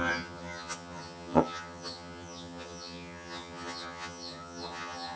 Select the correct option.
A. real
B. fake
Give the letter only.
B